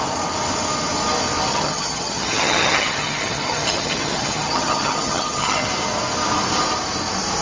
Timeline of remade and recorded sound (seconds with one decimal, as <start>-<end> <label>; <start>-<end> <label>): 0.0-1.5 recorded; 1.5-5.7 remade; 5.7-7.4 recorded